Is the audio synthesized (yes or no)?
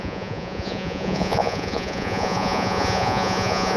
yes